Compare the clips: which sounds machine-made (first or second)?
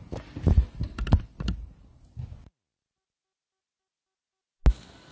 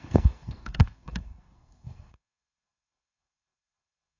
second